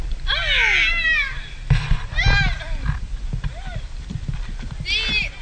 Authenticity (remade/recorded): recorded